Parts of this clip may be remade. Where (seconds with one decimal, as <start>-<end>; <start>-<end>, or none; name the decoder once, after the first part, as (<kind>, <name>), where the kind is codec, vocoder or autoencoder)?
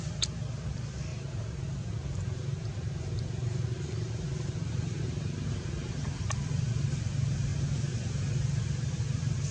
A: 1.1-5.5 (vocoder, BigVGAN v2)